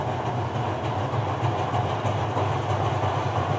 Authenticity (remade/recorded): recorded